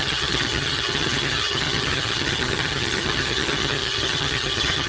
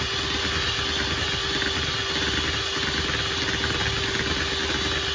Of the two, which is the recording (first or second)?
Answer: second